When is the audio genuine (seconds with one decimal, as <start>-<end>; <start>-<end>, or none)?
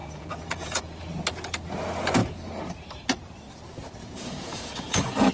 0.8-4.0